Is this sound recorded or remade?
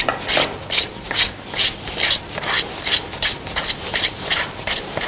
recorded